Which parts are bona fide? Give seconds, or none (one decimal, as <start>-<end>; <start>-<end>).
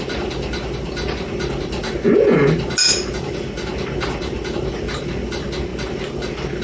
0.0-6.6